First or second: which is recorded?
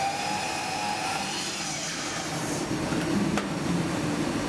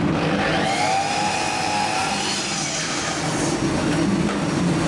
second